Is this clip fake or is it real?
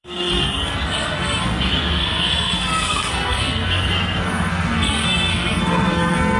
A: fake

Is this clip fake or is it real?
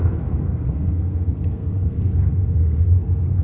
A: fake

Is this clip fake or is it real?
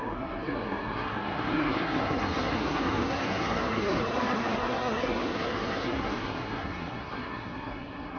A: fake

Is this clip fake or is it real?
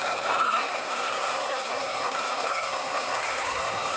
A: fake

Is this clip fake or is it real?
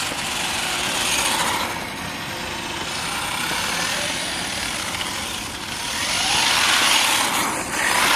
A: real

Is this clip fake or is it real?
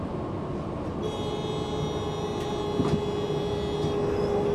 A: real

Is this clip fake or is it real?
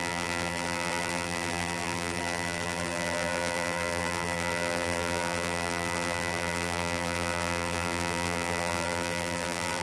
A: fake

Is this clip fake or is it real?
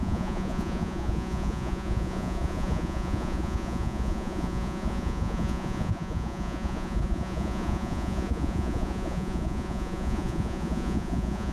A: fake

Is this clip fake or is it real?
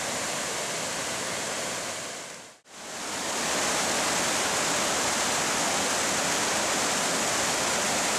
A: fake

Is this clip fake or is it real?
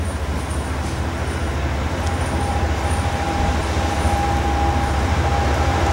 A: real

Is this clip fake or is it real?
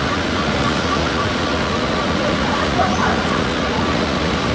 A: fake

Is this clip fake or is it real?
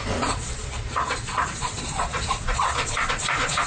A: fake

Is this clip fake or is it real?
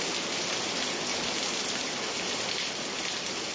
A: real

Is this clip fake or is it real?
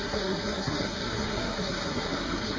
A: fake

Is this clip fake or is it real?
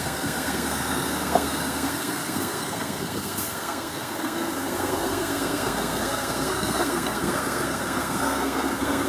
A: fake